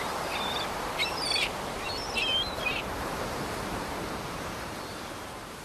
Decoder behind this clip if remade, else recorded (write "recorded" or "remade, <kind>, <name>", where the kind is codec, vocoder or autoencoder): remade, vocoder, BigVGAN v2